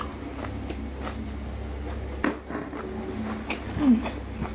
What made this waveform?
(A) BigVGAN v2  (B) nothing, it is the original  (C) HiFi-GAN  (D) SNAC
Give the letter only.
B